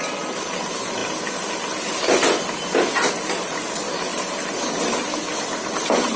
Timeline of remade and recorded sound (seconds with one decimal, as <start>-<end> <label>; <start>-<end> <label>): 0.0-6.2 recorded